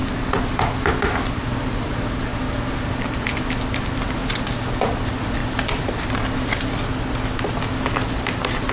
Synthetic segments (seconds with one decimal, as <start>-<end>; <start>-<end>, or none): none